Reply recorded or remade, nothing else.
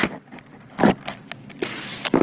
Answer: recorded